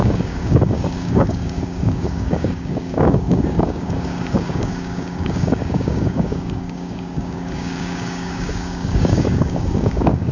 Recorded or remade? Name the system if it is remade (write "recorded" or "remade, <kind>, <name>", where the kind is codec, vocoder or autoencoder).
remade, codec, DAC